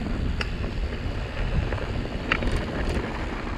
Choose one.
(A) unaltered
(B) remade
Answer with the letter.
A